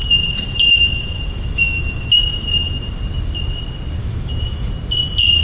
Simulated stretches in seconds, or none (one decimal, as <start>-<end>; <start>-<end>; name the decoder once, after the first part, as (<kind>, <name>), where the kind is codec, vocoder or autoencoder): 0.0-2.8 (autoencoder, DAC-VAE); 4.0-4.7